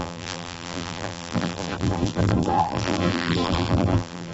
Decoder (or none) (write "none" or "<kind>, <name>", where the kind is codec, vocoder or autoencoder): vocoder, BigVGAN v2